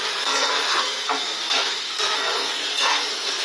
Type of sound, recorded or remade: remade